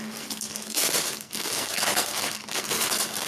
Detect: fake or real fake